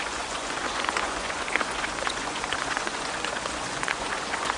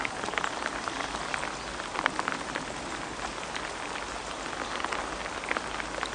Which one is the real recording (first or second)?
second